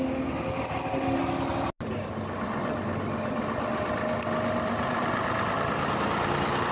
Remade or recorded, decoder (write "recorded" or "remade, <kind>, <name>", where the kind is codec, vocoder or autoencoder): recorded